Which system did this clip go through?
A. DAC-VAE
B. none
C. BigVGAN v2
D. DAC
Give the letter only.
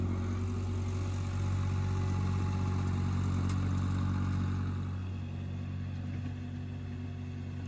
B